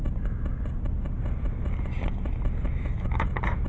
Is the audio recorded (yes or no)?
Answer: yes